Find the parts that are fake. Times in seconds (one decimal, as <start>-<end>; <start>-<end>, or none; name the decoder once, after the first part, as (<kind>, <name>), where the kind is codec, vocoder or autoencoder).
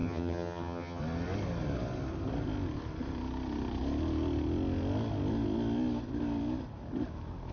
0.0-1.0 (vocoder, HiFi-GAN)